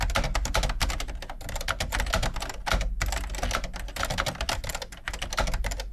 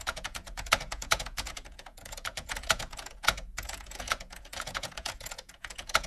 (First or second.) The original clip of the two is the first